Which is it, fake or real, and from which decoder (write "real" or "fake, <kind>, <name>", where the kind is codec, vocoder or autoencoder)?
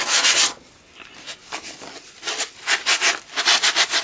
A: real